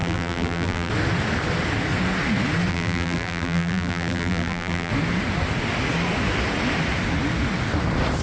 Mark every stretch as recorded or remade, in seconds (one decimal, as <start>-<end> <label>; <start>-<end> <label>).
0.0-0.9 remade; 0.9-2.7 recorded; 2.7-4.9 remade; 4.9-8.2 recorded